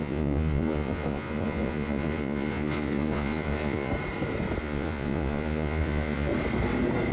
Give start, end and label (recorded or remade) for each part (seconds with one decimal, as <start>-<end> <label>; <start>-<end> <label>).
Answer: 0.0-3.9 remade; 3.9-4.6 recorded; 4.6-6.3 remade; 6.3-7.1 recorded